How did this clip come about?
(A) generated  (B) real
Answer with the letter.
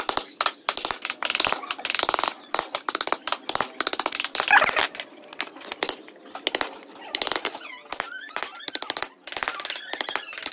B